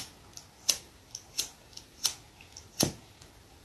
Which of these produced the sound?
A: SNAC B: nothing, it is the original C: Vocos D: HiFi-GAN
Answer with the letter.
B